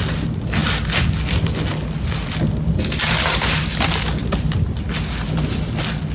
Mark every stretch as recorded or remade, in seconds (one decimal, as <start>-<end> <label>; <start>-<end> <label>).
0.0-6.1 recorded